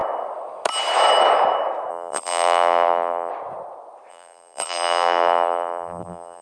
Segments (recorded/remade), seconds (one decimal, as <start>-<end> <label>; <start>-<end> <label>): 0.0-1.9 recorded; 1.9-3.3 remade; 3.3-4.1 recorded; 4.1-6.4 remade